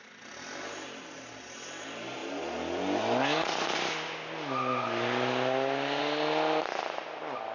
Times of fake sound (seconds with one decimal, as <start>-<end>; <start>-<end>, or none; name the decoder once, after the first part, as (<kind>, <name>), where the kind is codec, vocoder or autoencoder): none